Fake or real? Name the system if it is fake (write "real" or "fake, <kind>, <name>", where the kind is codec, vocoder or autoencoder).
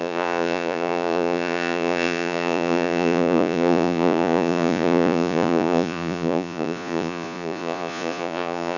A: fake, vocoder, Vocos